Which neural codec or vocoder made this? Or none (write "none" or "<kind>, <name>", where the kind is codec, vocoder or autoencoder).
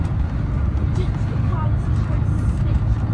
none